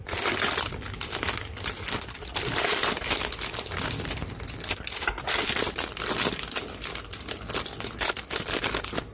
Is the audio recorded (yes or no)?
yes